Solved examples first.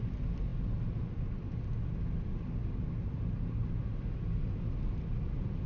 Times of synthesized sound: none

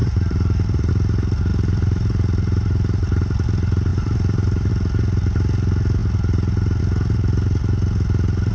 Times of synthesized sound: 0.0-0.9 (vocoder, BigVGAN v2); 1.5-3.2; 3.9-4.7

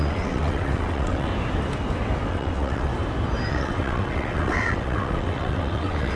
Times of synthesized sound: 0.0-1.3 (vocoder, WaveNeXt); 2.3-2.9; 3.5-6.2

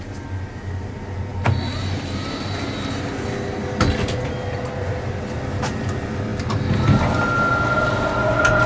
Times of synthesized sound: none